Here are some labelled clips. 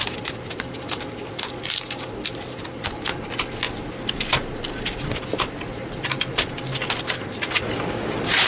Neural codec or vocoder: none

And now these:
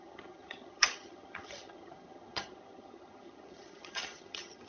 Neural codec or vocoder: vocoder, HiFi-GAN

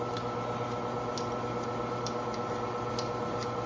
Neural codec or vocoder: none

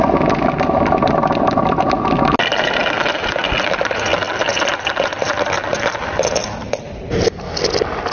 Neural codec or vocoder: none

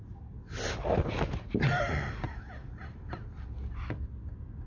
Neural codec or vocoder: none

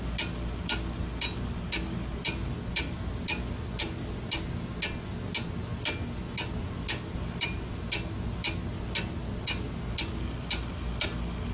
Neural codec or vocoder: none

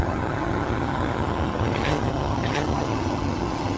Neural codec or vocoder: vocoder, HiFi-GAN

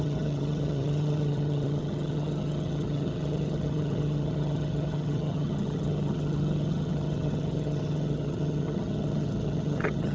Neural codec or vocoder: vocoder, HiFi-GAN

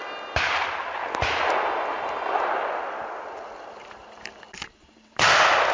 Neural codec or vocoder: none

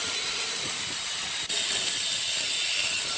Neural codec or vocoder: none